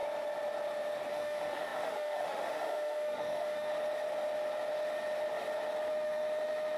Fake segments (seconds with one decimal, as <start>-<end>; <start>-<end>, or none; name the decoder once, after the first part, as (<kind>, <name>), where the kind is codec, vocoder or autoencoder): 1.1-3.7 (autoencoder, DAC-VAE); 5.9-6.8